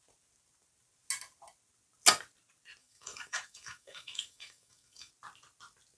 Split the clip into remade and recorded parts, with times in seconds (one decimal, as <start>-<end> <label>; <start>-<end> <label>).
0.0-2.8 recorded; 2.8-5.1 remade; 5.1-6.0 recorded